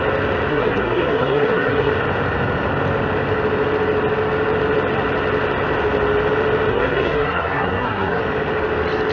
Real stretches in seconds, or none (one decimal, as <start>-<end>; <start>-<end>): 0.0-0.5; 1.9-6.7; 8.2-9.1